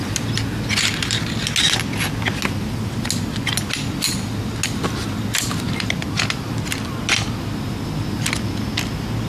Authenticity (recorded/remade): recorded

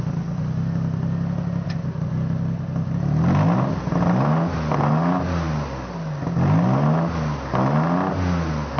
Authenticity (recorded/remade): recorded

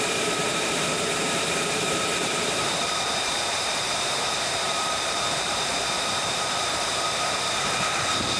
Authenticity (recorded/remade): remade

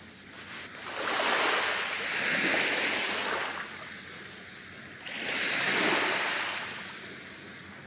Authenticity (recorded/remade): recorded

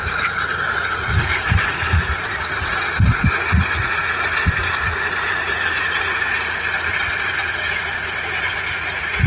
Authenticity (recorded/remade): remade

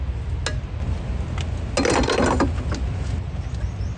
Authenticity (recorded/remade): recorded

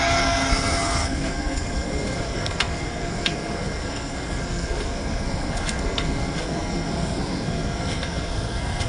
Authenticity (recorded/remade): remade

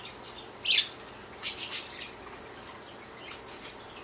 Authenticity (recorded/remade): recorded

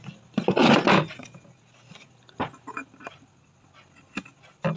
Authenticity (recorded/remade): recorded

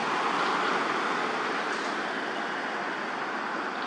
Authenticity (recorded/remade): recorded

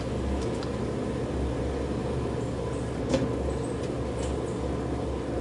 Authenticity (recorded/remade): recorded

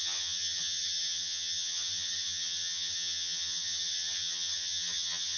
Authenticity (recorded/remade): remade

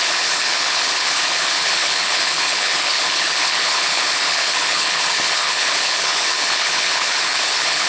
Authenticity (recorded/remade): remade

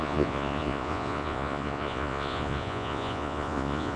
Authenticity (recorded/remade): remade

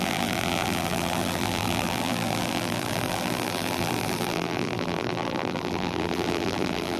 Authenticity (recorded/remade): remade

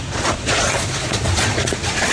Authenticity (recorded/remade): remade